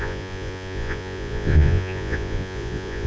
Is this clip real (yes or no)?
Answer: no